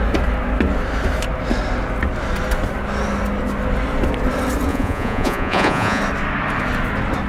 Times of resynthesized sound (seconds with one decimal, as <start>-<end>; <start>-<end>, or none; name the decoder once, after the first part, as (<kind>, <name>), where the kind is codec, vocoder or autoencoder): 4.7-6.0 (vocoder, Vocos)